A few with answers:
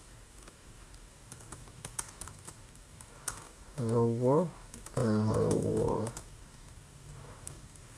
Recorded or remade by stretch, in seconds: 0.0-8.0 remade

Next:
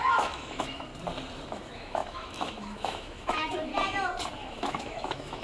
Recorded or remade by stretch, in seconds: 0.0-0.9 remade; 0.9-1.5 recorded; 1.5-3.7 remade; 3.7-4.4 recorded; 4.4-5.4 remade

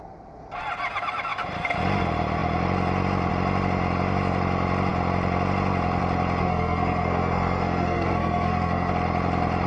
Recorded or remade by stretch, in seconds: 0.0-6.4 recorded; 6.4-8.9 remade; 8.9-9.7 recorded

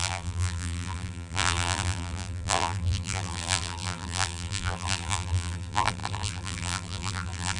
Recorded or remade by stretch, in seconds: 0.0-7.6 remade

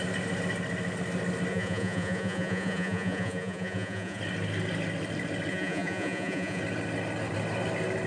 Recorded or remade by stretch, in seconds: 0.0-1.5 recorded; 1.5-4.2 remade; 4.2-5.5 recorded; 5.5-6.6 remade; 6.6-8.1 recorded